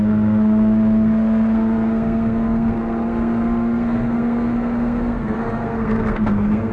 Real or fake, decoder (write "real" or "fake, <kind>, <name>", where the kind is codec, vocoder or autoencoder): fake, codec, SNAC